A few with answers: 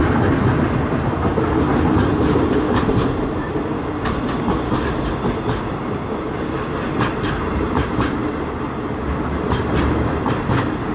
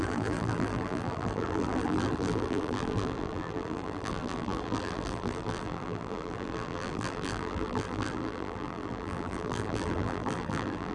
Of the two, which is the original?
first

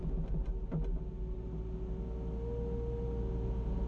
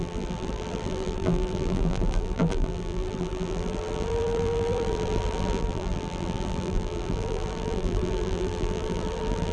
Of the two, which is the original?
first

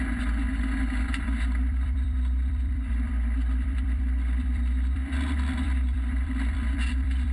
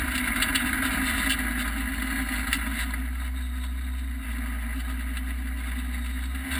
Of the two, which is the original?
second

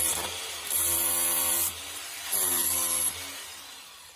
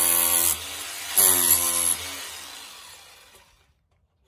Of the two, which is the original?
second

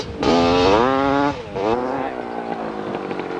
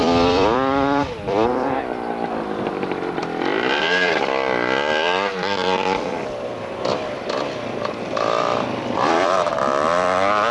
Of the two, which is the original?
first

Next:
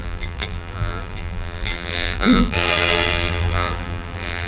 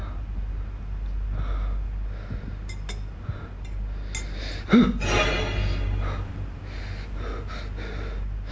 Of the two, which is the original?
second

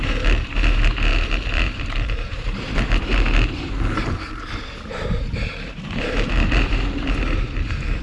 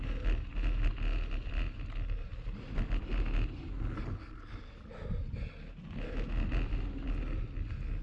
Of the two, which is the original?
second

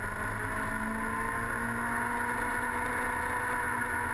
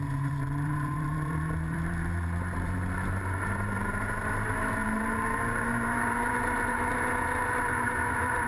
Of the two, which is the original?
first